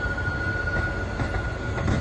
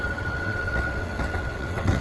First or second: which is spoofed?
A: second